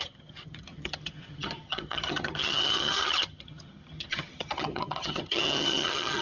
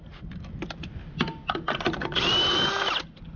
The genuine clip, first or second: second